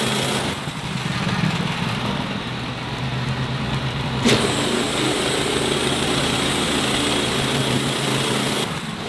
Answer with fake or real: real